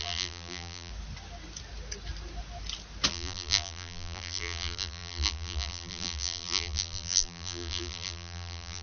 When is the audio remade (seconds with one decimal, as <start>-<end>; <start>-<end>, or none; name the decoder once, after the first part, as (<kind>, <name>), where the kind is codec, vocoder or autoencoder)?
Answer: 0.0-0.9 (vocoder, BigVGAN v2); 3.1-8.8